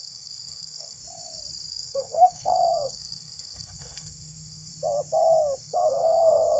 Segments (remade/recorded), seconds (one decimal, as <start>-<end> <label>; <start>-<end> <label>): 0.0-1.0 remade; 1.0-1.7 recorded; 1.7-4.7 remade; 4.7-5.6 recorded; 5.6-6.6 remade